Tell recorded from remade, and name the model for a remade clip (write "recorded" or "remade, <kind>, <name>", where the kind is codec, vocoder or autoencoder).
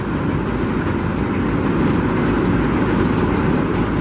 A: recorded